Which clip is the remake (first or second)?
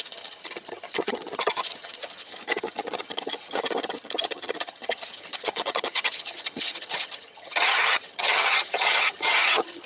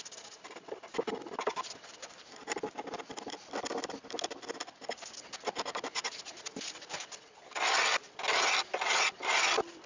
first